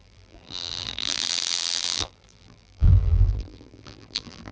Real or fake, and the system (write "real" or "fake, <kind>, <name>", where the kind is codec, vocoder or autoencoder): fake, vocoder, BigVGAN v2